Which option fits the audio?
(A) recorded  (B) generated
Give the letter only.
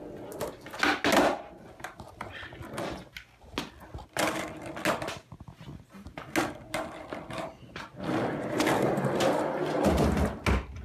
A